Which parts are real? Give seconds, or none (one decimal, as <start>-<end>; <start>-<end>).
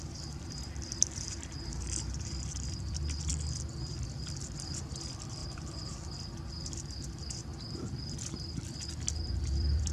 3.3-3.9; 7.5-8.6